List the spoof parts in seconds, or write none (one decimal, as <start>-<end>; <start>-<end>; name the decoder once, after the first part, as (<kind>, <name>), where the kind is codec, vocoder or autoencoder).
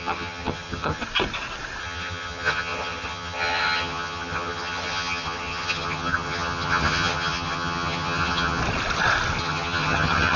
0.0-1.0 (vocoder, HiFi-GAN); 1.8-8.6; 9.4-10.4